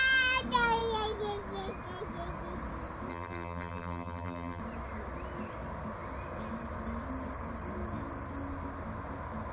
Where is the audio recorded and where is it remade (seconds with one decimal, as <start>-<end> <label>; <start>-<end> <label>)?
0.0-3.1 recorded; 3.1-4.6 remade; 4.6-9.5 recorded